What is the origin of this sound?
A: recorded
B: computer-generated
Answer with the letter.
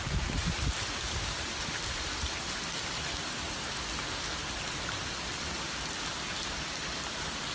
A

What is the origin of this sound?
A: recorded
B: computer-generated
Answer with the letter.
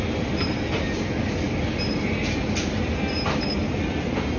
A